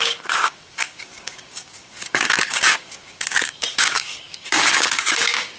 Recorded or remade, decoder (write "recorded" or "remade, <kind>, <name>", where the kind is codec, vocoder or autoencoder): remade, codec, DAC